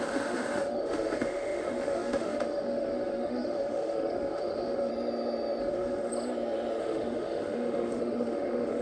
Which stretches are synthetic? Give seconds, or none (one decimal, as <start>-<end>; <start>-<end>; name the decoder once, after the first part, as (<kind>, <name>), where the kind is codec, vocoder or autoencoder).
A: 0.0-4.9 (autoencoder, DAC-VAE); 5.6-6.1; 6.8-8.8